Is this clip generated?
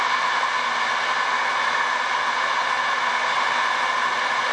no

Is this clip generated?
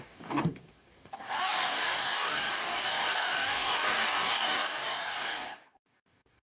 yes